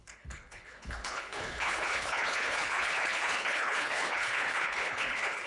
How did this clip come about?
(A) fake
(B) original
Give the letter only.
A